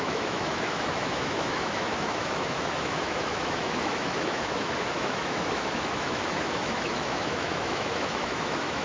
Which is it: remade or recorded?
remade